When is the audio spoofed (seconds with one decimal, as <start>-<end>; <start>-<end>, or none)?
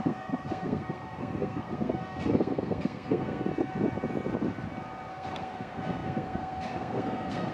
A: 0.0-3.5; 5.1-7.5